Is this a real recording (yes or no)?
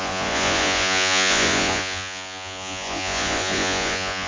no